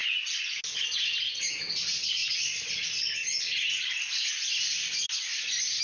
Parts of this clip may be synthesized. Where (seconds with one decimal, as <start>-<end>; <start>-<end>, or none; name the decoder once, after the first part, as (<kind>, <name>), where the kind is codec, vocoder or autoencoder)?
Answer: none